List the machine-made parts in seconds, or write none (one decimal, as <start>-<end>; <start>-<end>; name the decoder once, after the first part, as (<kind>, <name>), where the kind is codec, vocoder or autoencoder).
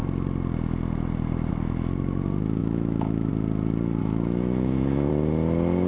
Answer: 2.6-3.3 (autoencoder, DAC-VAE); 4.0-5.1